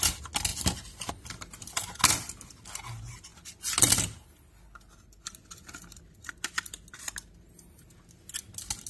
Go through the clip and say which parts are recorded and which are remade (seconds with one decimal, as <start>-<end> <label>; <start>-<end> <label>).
0.0-8.9 recorded